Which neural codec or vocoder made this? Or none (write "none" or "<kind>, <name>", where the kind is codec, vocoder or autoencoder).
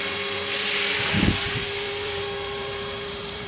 vocoder, BigVGAN v2